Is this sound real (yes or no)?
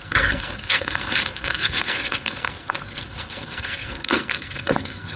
no